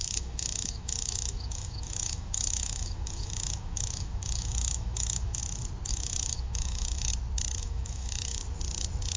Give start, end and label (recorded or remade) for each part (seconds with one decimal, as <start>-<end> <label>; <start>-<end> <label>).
0.0-5.4 remade; 5.4-5.9 recorded; 5.9-7.1 remade; 7.1-7.6 recorded; 7.6-8.4 remade; 8.4-9.2 recorded

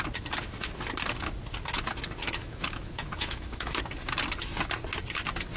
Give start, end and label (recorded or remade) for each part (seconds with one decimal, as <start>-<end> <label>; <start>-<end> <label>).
0.0-2.4 recorded; 2.4-3.8 remade; 3.8-5.6 recorded

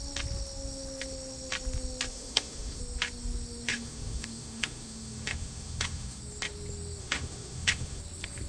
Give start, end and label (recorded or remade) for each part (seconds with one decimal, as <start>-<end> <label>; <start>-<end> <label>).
0.0-2.1 recorded; 2.1-2.8 remade; 2.8-3.7 recorded; 3.7-6.2 remade; 6.2-7.0 recorded; 7.0-8.0 remade; 8.0-8.5 recorded

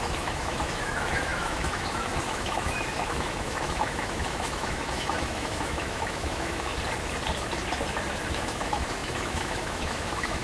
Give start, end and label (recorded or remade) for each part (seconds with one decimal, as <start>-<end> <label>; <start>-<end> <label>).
0.0-6.7 remade; 6.7-8.3 recorded; 8.3-10.4 remade

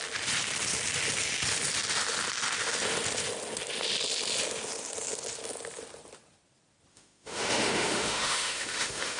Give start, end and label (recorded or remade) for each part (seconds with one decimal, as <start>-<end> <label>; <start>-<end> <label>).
0.0-6.9 recorded; 6.9-9.2 remade